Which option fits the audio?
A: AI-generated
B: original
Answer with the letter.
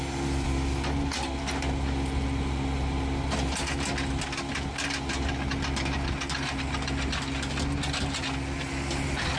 B